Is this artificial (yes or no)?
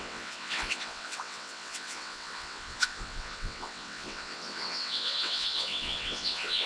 yes